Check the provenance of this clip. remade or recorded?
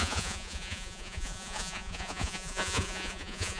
remade